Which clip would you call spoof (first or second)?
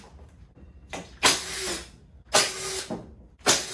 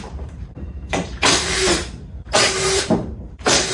second